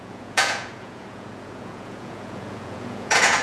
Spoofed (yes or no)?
yes